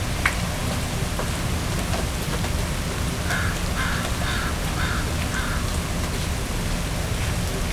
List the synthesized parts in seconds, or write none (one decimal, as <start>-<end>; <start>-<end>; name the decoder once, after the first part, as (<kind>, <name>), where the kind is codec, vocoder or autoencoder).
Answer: none